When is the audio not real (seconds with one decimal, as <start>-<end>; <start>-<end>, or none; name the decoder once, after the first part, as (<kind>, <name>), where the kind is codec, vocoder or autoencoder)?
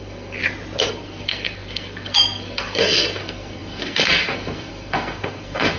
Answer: 0.0-0.4 (codec, SNAC); 0.9-5.8